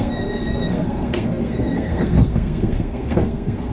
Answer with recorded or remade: remade